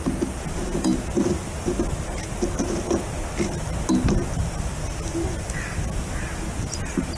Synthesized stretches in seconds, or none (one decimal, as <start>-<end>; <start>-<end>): none